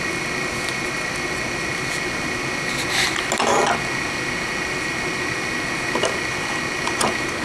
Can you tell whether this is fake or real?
real